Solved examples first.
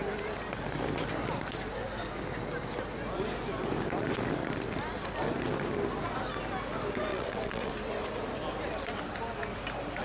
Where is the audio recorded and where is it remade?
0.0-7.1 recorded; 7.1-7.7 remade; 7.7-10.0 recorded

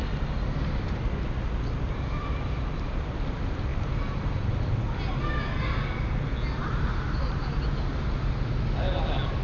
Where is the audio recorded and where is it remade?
0.0-3.7 recorded; 3.7-4.8 remade; 4.8-6.6 recorded; 6.6-7.5 remade; 7.5-9.4 recorded